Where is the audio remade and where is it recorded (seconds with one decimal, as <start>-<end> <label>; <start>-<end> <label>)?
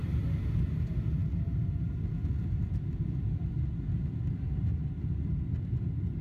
0.0-6.2 recorded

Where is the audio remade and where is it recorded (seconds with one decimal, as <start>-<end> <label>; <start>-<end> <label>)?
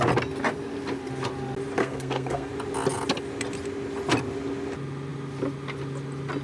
0.0-1.8 recorded; 1.8-2.5 remade; 2.5-6.4 recorded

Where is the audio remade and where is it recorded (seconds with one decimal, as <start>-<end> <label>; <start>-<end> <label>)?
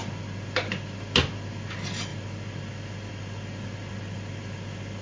0.0-5.0 recorded